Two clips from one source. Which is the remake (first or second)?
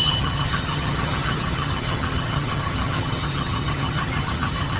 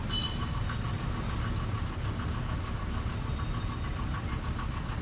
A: first